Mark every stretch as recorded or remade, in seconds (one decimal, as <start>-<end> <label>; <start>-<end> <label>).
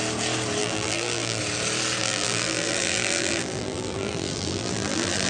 0.0-0.6 recorded; 0.6-1.4 remade; 1.4-2.0 recorded; 2.0-5.3 remade